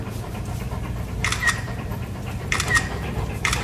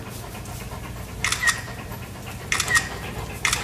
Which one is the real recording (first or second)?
second